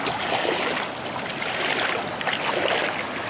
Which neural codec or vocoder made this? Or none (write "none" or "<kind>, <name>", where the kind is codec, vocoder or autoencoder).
none